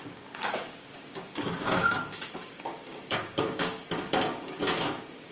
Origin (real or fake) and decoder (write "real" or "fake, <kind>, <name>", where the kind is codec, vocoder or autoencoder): fake, codec, DAC